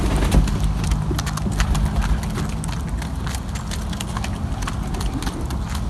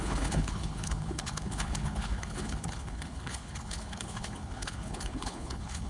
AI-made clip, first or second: second